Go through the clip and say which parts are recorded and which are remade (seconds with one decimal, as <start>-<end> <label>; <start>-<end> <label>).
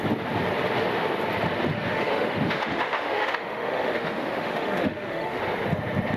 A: 0.0-1.7 recorded; 1.7-5.4 remade; 5.4-6.2 recorded